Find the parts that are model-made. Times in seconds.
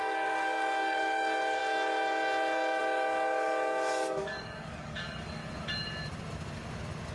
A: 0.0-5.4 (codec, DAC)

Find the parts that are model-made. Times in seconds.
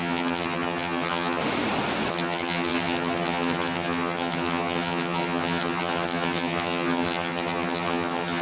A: 0.0-1.4 (vocoder, HiFi-GAN); 2.1-8.4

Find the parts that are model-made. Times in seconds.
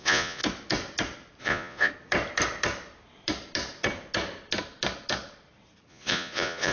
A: 0.0-0.4 (vocoder, Vocos); 1.4-1.9; 5.9-6.7